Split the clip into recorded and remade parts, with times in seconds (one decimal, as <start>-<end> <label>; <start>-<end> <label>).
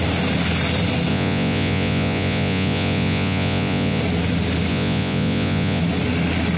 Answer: 0.0-1.1 recorded; 1.1-4.0 remade; 4.0-4.7 recorded; 4.7-5.8 remade; 5.8-6.6 recorded